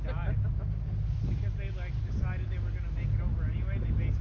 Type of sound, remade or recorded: recorded